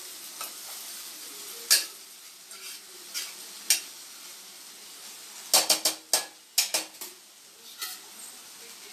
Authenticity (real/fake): real